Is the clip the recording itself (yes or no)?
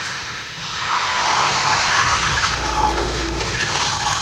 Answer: no